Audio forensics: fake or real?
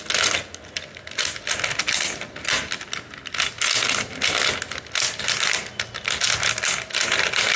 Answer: real